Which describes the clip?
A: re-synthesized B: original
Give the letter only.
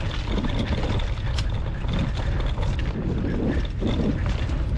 B